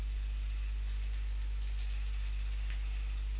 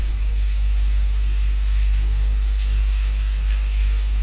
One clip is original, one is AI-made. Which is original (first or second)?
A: first